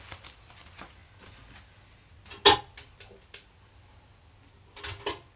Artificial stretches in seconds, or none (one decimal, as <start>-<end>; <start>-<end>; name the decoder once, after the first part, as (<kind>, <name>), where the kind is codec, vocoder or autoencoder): none